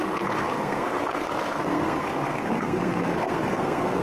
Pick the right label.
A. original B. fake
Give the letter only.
B